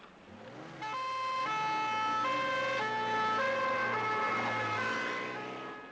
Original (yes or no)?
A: yes